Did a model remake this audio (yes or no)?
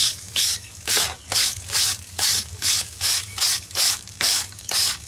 yes